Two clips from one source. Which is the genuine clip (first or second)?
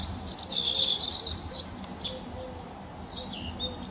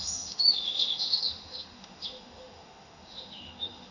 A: first